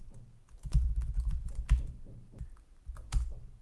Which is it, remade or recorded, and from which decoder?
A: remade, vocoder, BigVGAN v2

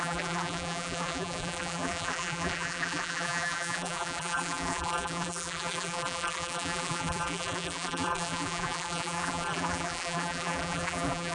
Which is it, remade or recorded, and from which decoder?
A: remade, vocoder, BigVGAN v2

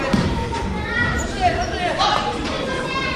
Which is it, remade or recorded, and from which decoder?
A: remade, vocoder, BigVGAN v2